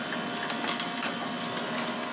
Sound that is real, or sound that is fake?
real